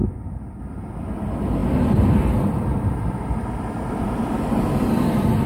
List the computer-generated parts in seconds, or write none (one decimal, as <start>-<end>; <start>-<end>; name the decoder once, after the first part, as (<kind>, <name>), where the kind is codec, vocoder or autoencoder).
none